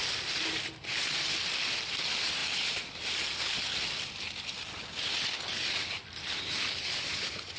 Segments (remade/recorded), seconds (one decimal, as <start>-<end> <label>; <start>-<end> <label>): 0.0-7.6 recorded